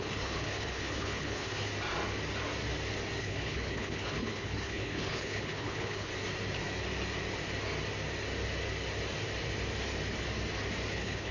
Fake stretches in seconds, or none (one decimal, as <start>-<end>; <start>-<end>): 0.0-1.7; 3.2-6.1; 10.9-11.3